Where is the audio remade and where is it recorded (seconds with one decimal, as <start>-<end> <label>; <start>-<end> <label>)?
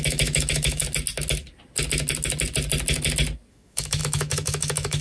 0.0-0.8 remade; 0.8-3.5 recorded; 3.5-5.0 remade